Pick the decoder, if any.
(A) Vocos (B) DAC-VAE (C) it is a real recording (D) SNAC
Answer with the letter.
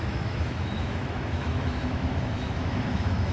B